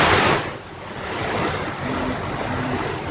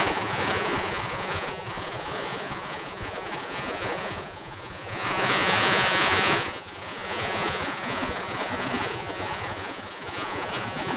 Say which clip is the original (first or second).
first